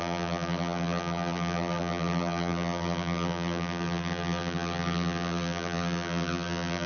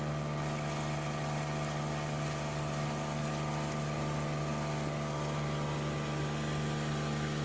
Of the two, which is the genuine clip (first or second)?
second